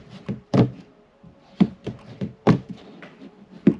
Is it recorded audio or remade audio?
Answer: remade